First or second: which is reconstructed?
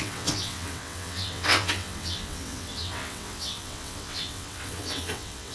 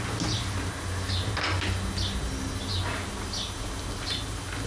first